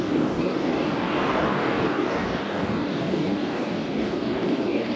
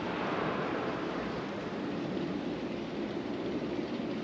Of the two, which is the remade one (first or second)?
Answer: first